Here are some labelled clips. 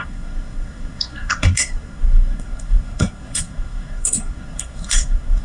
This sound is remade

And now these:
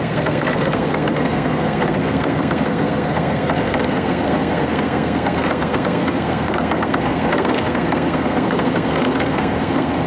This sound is remade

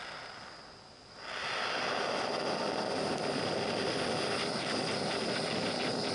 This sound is recorded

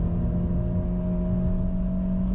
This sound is recorded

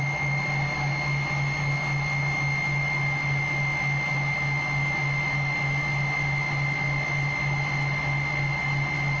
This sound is recorded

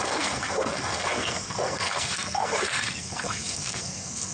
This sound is remade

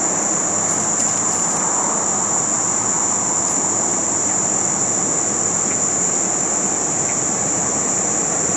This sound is recorded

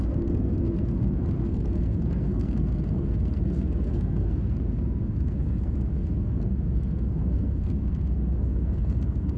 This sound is remade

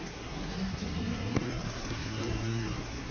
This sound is remade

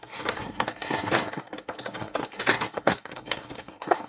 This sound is remade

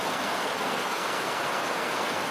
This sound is remade